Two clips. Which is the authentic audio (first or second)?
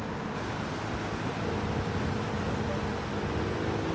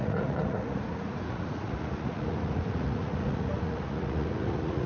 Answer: first